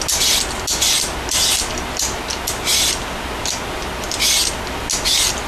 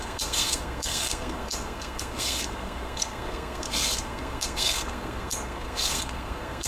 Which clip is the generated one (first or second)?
second